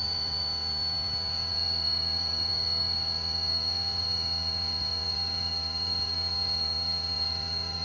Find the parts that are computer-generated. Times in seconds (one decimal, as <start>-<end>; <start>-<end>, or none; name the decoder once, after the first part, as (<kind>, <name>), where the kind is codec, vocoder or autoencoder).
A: 0.0-7.8 (codec, DAC)